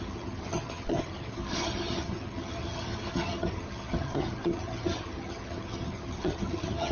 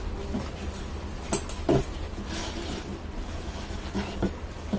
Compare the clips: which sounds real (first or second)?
second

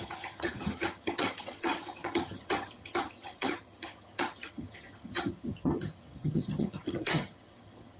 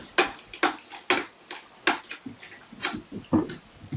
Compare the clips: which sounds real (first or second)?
second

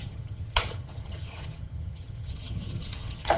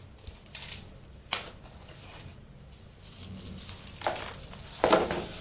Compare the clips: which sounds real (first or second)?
second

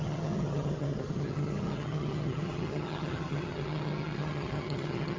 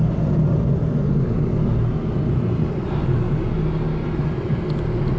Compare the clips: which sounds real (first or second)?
second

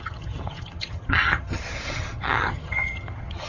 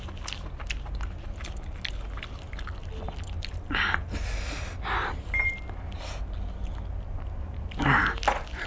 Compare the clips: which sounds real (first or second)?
second